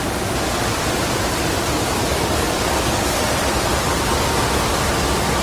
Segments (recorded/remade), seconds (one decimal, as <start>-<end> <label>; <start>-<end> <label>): 0.0-2.0 recorded; 2.0-3.2 remade; 3.2-5.4 recorded